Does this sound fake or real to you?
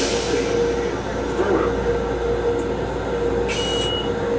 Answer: real